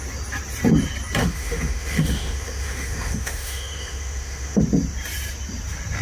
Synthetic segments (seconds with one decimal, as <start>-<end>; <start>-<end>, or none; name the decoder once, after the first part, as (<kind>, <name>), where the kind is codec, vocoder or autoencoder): 1.2-4.6 (autoencoder, DAC-VAE)